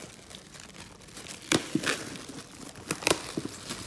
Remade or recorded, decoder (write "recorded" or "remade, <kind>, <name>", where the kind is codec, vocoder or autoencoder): recorded